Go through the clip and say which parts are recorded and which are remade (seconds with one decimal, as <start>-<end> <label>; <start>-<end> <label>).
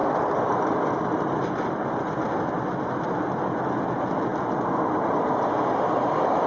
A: 0.0-6.5 recorded